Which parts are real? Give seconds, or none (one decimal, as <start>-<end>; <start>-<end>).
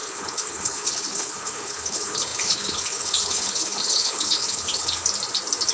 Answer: 5.0-5.7